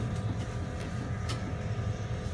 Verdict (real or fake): real